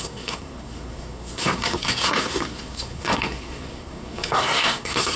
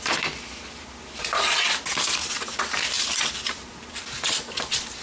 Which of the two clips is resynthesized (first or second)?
first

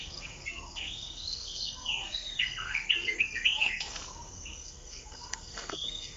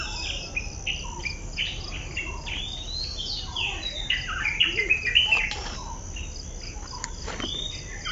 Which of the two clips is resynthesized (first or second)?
first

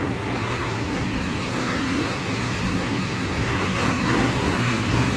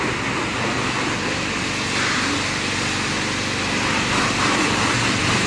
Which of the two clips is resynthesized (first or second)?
first